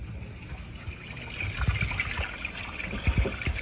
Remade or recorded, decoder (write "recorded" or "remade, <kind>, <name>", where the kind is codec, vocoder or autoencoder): recorded